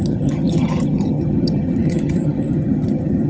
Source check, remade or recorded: remade